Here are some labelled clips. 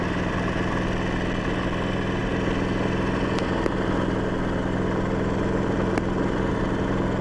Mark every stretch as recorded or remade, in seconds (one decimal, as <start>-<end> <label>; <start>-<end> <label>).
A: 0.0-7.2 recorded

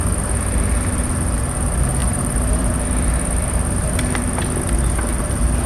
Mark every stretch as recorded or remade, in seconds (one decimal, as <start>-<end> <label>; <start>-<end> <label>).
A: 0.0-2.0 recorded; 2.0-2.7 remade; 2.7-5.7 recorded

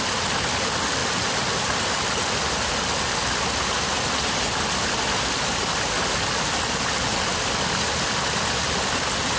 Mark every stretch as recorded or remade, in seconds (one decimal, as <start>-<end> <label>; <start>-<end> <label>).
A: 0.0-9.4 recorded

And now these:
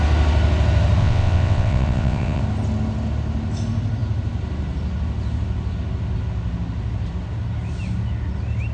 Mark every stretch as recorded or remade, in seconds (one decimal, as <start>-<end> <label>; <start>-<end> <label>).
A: 0.0-1.0 recorded; 1.0-2.4 remade; 2.4-8.7 recorded

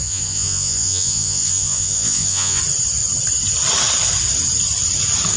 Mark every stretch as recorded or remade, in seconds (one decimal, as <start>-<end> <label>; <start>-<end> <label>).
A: 0.0-2.6 remade; 2.6-5.4 recorded

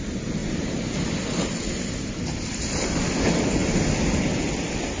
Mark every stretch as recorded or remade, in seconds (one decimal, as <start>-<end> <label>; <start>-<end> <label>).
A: 0.0-5.0 recorded